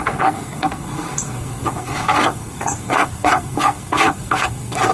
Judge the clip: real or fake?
fake